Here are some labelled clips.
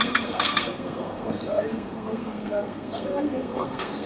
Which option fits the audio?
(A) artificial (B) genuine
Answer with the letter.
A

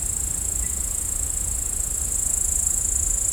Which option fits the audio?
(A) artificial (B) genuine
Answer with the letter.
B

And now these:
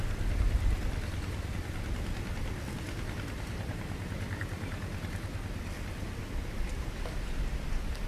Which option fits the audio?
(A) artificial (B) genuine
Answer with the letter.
B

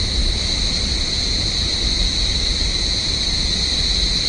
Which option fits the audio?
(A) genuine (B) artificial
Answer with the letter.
A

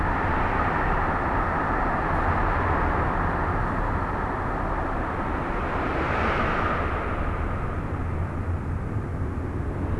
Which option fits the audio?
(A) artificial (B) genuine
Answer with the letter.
B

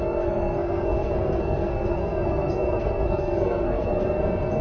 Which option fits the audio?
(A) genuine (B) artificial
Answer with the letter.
B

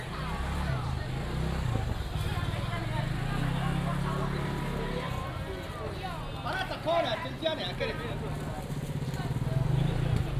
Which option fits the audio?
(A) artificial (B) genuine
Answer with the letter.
B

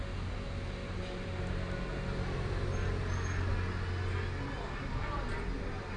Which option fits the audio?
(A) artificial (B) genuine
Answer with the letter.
B